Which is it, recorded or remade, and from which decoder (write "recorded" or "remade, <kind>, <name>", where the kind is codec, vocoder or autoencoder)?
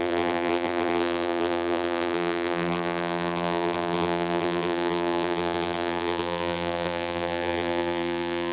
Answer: remade, vocoder, BigVGAN v2